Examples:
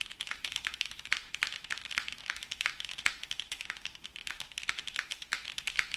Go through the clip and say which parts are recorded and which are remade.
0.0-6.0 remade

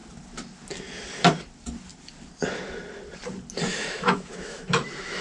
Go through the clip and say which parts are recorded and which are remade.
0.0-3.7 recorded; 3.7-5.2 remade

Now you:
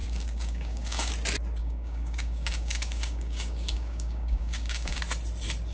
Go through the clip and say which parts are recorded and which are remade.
0.0-1.1 remade; 1.1-1.6 recorded; 1.6-5.0 remade; 5.0-5.7 recorded

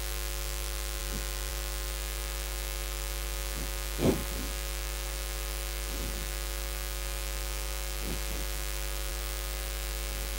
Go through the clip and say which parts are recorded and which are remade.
0.0-1.0 remade; 1.0-1.5 recorded; 1.5-10.4 remade

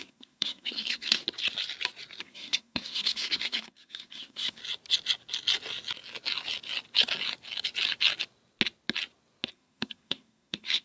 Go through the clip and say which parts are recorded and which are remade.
0.0-1.2 remade; 1.2-2.2 recorded; 2.2-4.6 remade; 4.6-9.5 recorded; 9.5-10.8 remade

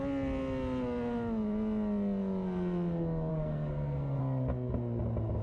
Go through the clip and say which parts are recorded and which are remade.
0.0-3.3 recorded; 3.3-4.2 remade; 4.2-5.4 recorded

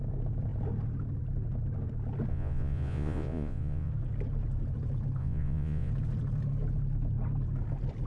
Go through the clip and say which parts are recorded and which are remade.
0.0-2.3 recorded; 2.3-3.9 remade; 3.9-5.2 recorded; 5.2-5.9 remade; 5.9-8.1 recorded